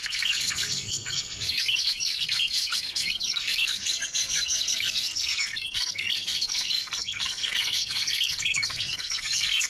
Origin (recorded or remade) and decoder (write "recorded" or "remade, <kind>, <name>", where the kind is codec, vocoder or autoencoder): remade, codec, SNAC